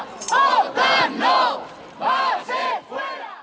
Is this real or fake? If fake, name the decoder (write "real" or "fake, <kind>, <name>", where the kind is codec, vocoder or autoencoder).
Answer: real